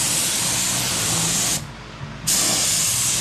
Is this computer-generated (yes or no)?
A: no